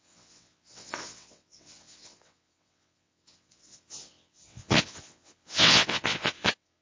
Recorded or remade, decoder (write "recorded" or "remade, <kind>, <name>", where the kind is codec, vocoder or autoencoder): remade, vocoder, WaveNeXt